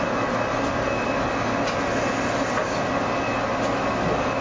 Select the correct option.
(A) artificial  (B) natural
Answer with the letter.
B